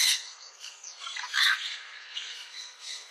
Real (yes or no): no